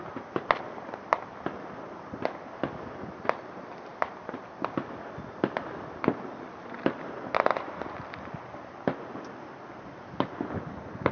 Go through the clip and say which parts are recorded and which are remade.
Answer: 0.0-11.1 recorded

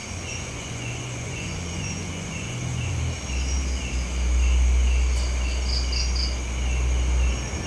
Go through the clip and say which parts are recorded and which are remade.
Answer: 0.0-3.0 remade; 3.0-7.7 recorded